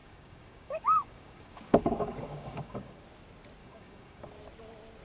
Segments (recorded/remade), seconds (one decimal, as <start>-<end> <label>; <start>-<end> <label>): 0.0-3.0 remade; 3.0-3.6 recorded; 3.6-4.3 remade; 4.3-5.0 recorded